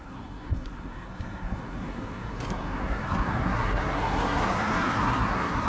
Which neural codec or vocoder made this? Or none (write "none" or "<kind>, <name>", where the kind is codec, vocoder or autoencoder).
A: codec, SNAC